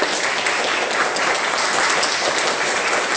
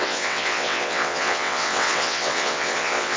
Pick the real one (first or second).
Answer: first